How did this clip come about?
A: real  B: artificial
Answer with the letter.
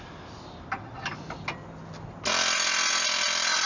A